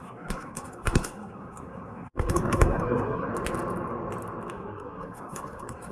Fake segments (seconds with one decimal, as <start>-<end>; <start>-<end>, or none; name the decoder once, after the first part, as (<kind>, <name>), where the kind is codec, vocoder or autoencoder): 0.0-3.3 (codec, SNAC); 4.5-5.9